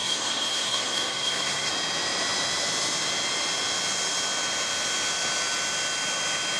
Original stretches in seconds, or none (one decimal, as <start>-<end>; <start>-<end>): 1.7-6.6